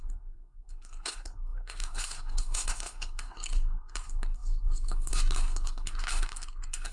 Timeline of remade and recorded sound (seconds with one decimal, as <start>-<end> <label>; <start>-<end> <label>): 0.0-6.9 remade